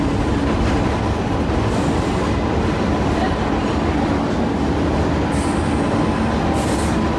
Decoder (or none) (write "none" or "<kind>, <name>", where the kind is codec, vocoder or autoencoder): none